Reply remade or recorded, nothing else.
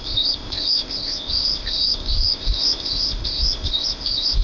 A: remade